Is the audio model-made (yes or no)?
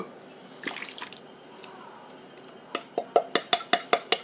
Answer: no